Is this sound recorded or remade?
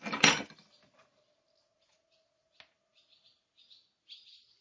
recorded